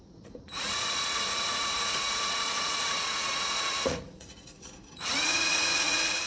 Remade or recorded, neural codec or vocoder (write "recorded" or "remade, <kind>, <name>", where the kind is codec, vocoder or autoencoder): remade, vocoder, Vocos